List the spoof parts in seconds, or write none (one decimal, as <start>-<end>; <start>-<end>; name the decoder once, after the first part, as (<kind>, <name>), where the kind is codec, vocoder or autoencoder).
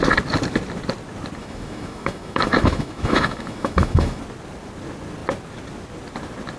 1.4-4.2 (autoencoder, DAC-VAE)